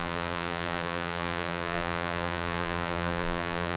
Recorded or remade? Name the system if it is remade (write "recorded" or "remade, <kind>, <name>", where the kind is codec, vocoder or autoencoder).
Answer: remade, vocoder, BigVGAN v2